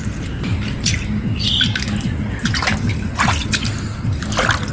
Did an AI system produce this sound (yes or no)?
no